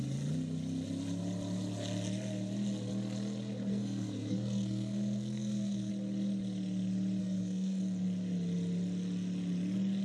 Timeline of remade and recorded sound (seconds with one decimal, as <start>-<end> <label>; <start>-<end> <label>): 0.0-3.7 recorded; 3.7-5.9 remade; 5.9-7.2 recorded; 7.2-7.8 remade; 7.8-10.0 recorded